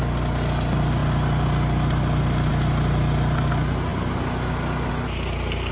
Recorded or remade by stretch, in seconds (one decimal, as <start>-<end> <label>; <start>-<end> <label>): 0.0-5.7 recorded